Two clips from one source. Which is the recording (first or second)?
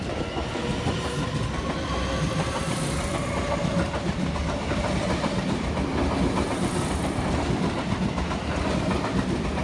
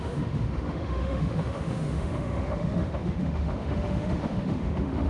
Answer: first